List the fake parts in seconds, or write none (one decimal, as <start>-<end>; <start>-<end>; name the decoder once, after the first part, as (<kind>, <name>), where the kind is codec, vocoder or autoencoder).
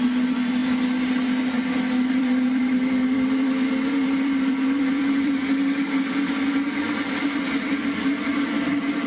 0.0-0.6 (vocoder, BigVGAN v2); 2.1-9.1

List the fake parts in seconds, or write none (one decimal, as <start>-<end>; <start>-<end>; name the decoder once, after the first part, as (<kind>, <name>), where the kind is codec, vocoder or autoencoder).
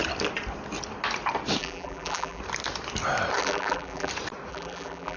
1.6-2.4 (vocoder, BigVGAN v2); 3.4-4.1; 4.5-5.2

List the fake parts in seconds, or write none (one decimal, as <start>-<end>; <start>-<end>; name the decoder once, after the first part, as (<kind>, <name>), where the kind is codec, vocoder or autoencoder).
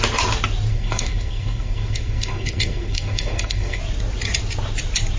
0.7-3.8 (codec, SNAC)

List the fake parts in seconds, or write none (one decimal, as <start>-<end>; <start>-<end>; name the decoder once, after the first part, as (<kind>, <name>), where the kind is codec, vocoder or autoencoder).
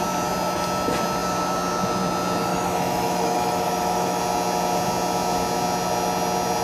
2.5-4.2 (autoencoder, DAC-VAE)